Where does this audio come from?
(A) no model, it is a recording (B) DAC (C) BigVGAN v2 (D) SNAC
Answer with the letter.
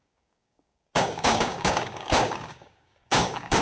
B